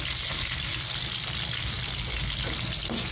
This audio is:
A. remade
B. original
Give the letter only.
B